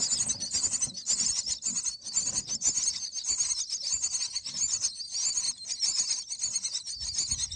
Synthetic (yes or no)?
no